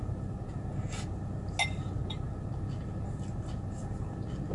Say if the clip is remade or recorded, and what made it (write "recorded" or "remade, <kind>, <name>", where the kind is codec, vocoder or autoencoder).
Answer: recorded